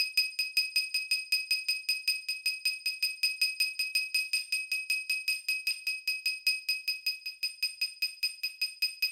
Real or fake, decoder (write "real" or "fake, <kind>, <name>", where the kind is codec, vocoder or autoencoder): real